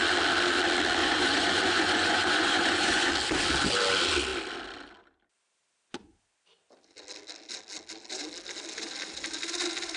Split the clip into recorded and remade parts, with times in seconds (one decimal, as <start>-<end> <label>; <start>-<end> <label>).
0.0-1.0 recorded; 1.0-3.1 remade; 3.1-10.0 recorded